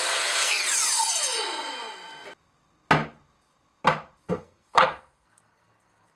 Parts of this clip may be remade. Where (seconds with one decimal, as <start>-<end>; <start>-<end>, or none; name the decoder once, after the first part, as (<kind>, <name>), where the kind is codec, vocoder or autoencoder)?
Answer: 0.0-0.6 (codec, SNAC); 4.3-6.2